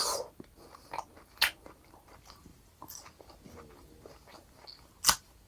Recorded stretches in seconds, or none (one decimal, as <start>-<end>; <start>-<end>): 0.0-5.5